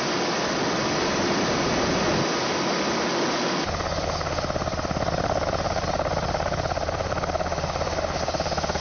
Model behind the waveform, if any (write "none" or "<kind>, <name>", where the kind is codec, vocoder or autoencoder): none